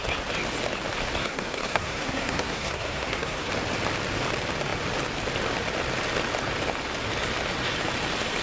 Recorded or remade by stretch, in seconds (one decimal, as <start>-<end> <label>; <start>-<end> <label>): 0.0-1.2 recorded; 1.2-3.5 remade; 3.5-8.4 recorded